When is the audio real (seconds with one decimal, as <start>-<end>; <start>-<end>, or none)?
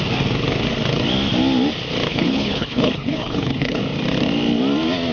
0.0-2.1; 3.8-5.1